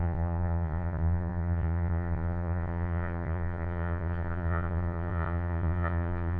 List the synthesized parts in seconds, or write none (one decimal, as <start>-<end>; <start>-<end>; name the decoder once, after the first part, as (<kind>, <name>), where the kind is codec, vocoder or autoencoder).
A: 0.0-6.4 (vocoder, Vocos)

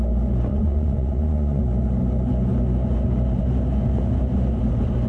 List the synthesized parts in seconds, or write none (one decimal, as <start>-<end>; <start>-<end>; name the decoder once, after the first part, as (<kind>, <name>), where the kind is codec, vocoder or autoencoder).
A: 0.5-1.6 (vocoder, Vocos)

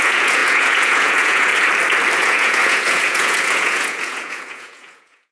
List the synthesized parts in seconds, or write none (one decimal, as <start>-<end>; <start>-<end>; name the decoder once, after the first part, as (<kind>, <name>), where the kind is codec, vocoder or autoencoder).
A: 0.0-1.5 (vocoder, Vocos); 2.2-5.3